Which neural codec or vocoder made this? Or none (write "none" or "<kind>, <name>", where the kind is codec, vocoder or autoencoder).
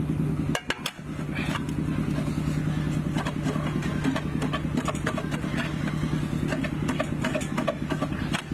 none